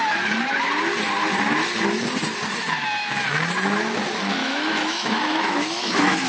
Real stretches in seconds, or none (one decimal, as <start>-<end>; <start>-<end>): 0.0-4.4